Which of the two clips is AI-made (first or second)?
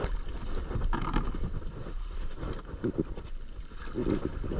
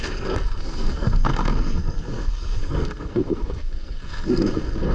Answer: second